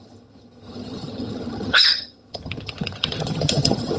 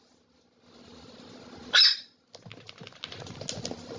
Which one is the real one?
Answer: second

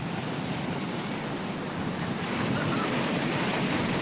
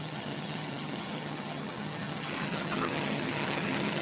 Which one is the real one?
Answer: first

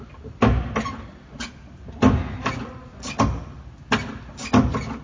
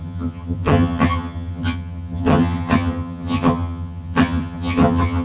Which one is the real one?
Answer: first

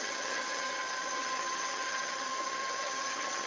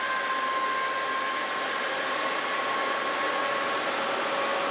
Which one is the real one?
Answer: second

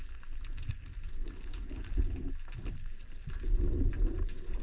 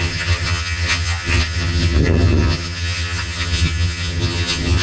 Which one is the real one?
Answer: first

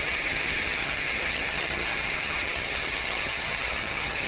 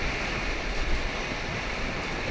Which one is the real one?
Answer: second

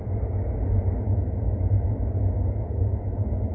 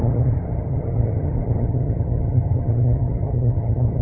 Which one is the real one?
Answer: first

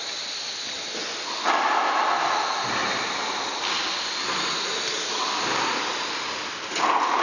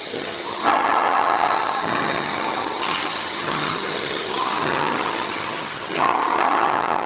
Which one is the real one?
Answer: first